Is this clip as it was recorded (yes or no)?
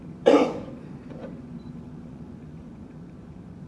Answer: no